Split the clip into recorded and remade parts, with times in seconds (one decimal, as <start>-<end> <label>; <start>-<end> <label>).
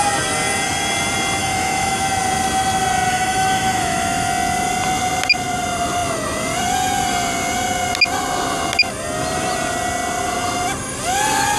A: 0.0-1.4 recorded; 1.4-2.0 remade; 2.0-3.1 recorded; 3.1-4.3 remade; 4.3-11.6 recorded